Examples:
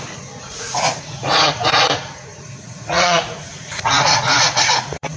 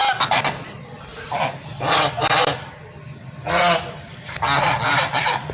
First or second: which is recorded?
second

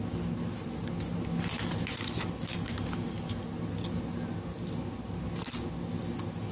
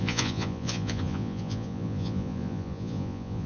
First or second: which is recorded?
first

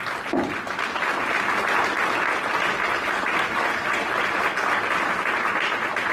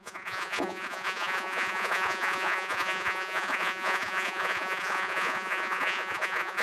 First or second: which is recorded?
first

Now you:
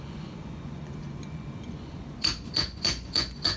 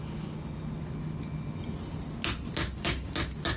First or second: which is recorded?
second